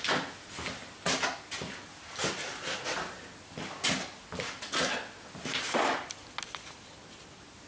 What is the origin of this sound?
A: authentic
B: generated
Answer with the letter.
A